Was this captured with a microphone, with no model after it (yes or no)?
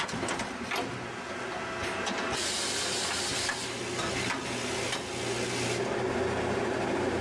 yes